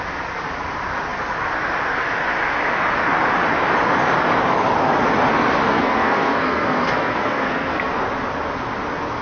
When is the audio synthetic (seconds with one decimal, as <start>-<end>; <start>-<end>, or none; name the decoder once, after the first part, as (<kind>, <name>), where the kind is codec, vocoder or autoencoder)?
5.7-7.9 (codec, SNAC)